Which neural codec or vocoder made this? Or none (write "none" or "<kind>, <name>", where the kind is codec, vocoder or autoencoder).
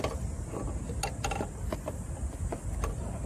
none